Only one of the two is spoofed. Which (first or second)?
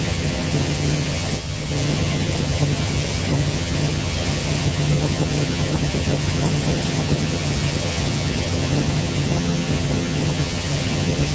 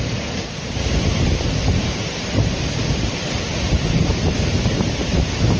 first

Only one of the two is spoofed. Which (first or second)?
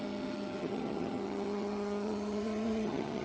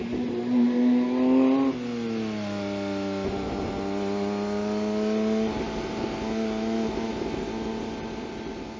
first